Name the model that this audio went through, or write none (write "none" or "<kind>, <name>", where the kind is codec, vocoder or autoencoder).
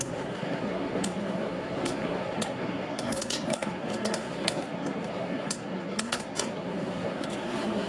codec, SNAC